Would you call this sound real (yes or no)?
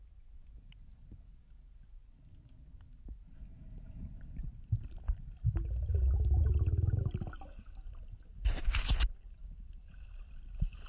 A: yes